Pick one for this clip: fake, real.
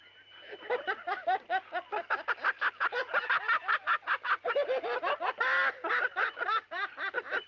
real